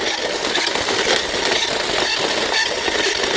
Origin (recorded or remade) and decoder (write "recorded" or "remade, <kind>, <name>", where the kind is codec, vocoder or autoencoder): recorded